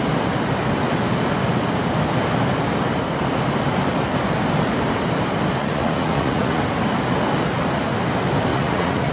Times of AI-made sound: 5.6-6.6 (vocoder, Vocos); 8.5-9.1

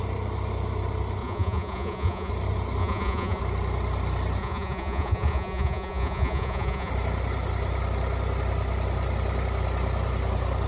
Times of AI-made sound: 1.2-2.3 (vocoder, Vocos); 2.8-3.4; 4.4-6.9

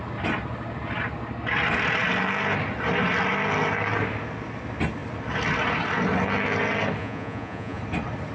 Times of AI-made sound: 7.0-7.8 (vocoder, Vocos)

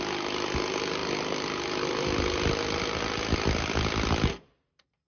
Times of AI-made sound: none

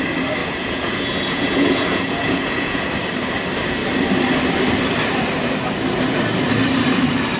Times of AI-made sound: 0.4-2.9 (vocoder, Vocos)

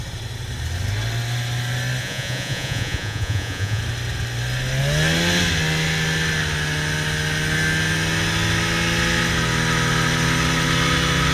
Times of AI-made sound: 2.0-3.8 (vocoder, Vocos)

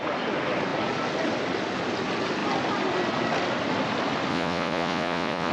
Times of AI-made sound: 4.3-5.5 (vocoder, Vocos)

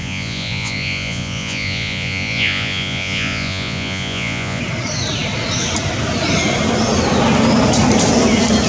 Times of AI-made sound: 0.0-4.6 (vocoder, Vocos)